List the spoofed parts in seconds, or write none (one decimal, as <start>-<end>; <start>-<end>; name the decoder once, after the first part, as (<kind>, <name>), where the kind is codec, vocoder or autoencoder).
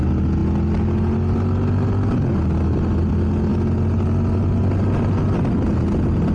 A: none